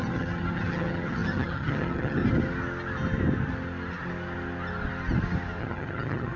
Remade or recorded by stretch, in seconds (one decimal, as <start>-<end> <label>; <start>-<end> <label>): 0.0-2.2 remade; 2.2-5.6 recorded; 5.6-6.4 remade